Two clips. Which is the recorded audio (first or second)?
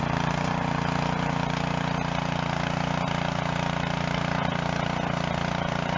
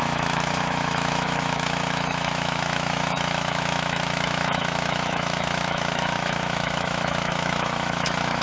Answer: first